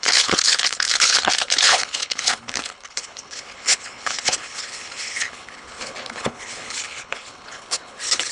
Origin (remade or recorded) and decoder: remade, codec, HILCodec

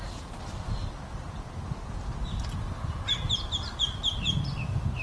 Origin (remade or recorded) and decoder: recorded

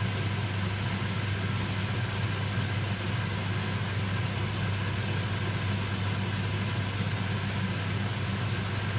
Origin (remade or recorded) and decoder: recorded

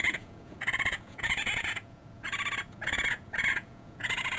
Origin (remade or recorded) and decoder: remade, vocoder, Vocos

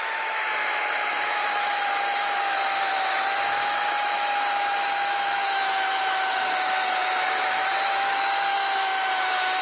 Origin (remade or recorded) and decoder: remade, autoencoder, DAC-VAE